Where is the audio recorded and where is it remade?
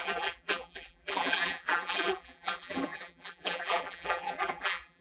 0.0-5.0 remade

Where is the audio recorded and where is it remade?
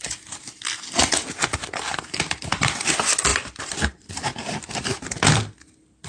0.0-1.6 recorded; 1.6-2.9 remade; 2.9-3.3 recorded; 3.3-4.7 remade; 4.7-6.1 recorded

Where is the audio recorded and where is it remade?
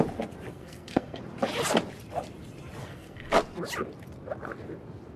0.0-0.5 recorded; 0.5-1.2 remade; 1.2-2.8 recorded; 2.8-3.3 remade; 3.3-5.2 recorded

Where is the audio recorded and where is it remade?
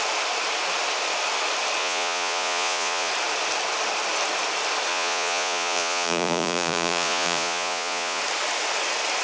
0.0-1.8 recorded; 1.8-3.1 remade; 3.1-4.9 recorded; 4.9-8.2 remade; 8.2-9.2 recorded